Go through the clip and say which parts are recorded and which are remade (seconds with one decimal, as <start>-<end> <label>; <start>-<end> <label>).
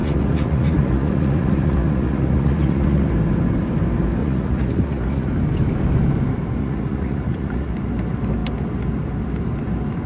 0.0-3.1 remade; 3.1-4.2 recorded; 4.2-5.3 remade; 5.3-6.6 recorded; 6.6-7.7 remade; 7.7-10.1 recorded